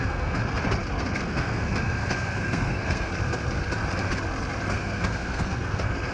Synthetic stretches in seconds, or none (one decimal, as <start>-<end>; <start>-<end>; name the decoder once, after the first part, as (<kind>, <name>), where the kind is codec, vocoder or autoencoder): 0.0-0.4 (codec, SNAC); 1.0-3.1; 4.7-6.1